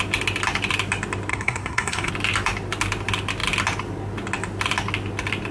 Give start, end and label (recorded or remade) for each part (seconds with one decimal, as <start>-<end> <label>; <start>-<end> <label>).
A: 0.0-1.3 recorded; 1.3-2.1 remade; 2.1-5.5 recorded